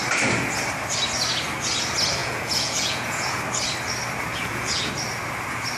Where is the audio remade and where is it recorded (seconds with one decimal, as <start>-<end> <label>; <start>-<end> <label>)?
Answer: 0.0-2.2 recorded; 2.2-3.4 remade; 3.4-4.3 recorded; 4.3-4.9 remade; 4.9-5.8 recorded